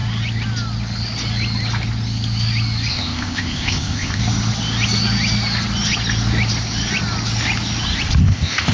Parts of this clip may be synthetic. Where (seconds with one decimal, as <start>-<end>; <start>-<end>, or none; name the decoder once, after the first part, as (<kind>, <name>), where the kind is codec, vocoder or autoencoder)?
2.9-4.2 (codec, ZipCodec); 8.2-8.7